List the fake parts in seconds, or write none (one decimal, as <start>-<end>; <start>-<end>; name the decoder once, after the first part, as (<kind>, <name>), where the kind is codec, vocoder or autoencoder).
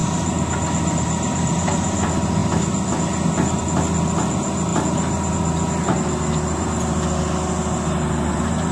none